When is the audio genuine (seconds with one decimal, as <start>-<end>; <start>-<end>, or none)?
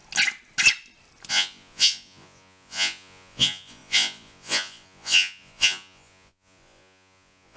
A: 0.0-1.3